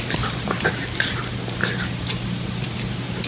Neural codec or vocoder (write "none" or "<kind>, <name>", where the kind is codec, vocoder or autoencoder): none